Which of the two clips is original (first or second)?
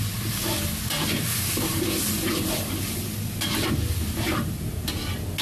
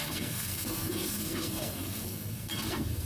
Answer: first